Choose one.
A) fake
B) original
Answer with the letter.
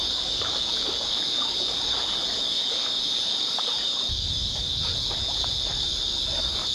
A